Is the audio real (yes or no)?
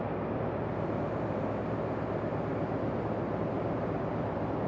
yes